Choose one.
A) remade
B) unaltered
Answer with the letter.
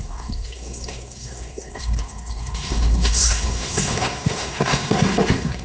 A